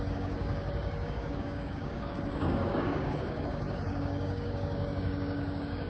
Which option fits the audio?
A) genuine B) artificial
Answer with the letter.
B